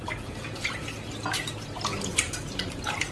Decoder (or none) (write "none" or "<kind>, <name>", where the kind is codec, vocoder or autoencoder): vocoder, BigVGAN v2